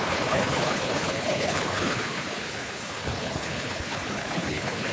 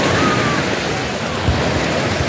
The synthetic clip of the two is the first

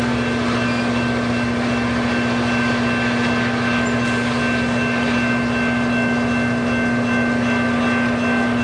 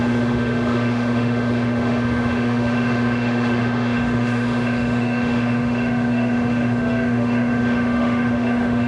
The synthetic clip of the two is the second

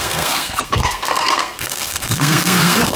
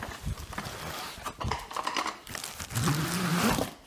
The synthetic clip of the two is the first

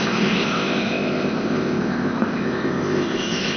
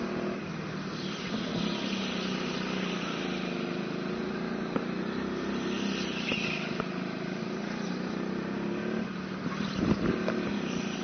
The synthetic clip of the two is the first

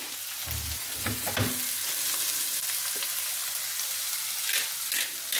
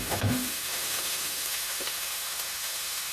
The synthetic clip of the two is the second